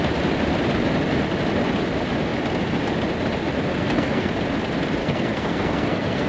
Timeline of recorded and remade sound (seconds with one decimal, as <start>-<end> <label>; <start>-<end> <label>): 0.0-3.7 recorded; 3.7-4.3 remade; 4.3-5.0 recorded; 5.0-6.3 remade